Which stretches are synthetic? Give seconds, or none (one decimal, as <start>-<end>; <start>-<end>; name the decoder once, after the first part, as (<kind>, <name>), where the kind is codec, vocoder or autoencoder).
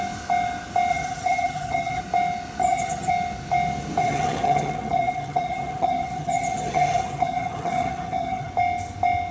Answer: 0.9-2.0 (vocoder, HiFi-GAN); 2.6-3.1; 4.0-8.5